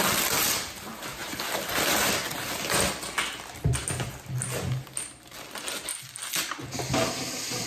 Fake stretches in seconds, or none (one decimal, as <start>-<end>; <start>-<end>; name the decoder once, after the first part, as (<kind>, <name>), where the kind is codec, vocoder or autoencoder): none